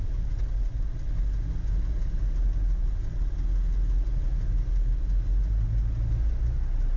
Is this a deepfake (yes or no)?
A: no